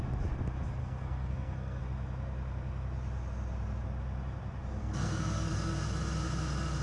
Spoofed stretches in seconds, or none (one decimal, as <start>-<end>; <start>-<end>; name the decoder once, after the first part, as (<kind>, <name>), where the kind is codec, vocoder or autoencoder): 0.8-1.8 (codec, SNAC); 4.8-5.5